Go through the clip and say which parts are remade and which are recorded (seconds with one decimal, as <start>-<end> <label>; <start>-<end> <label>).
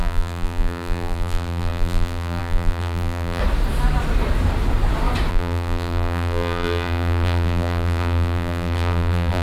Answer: 0.0-3.4 remade; 3.4-5.3 recorded; 5.3-9.4 remade